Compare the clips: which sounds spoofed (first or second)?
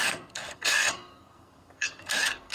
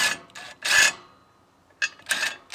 first